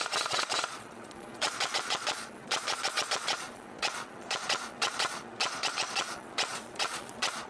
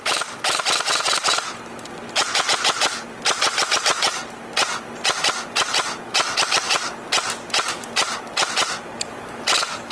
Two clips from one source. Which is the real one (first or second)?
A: second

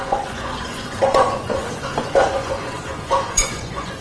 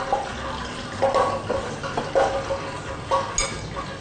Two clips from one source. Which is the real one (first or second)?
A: second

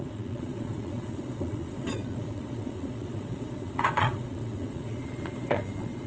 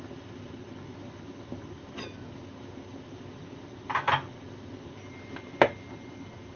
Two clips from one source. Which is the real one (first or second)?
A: second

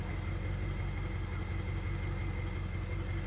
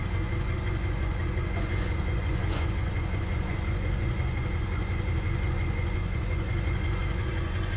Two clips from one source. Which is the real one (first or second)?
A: first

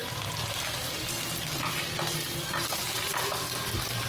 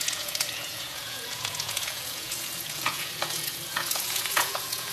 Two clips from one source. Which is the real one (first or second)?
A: first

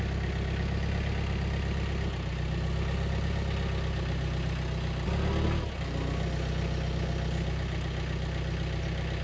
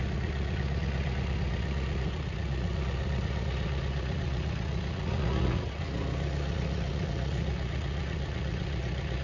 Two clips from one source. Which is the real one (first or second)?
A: first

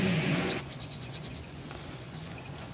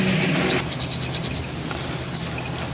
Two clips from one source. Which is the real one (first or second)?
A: second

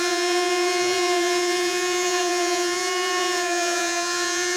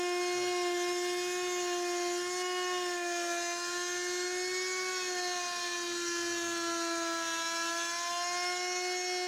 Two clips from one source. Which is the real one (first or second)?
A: second